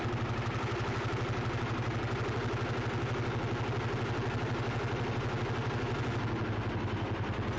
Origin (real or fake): real